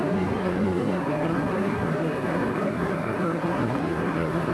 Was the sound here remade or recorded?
remade